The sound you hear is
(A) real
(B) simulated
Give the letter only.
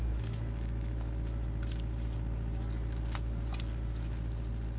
A